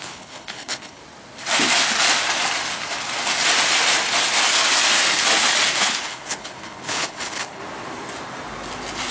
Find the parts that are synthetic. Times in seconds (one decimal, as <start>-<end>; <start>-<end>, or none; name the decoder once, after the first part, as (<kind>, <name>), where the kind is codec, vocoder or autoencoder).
0.0-1.0 (codec, HILCodec); 5.8-7.6